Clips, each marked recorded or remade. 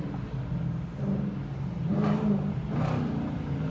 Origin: recorded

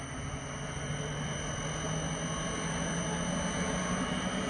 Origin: recorded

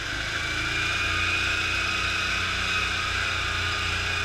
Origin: recorded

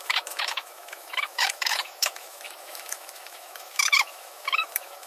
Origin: remade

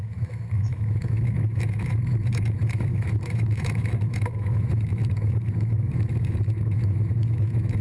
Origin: remade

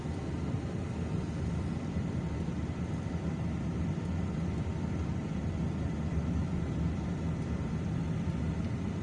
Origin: recorded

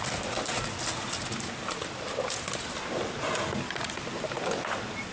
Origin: recorded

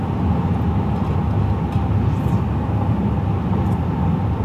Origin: recorded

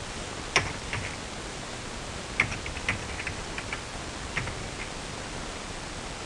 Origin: recorded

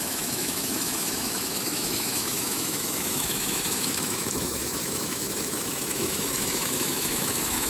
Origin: remade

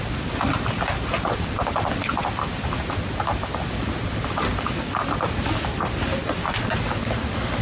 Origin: recorded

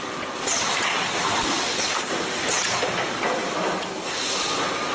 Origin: recorded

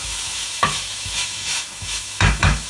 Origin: remade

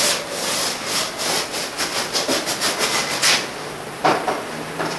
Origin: recorded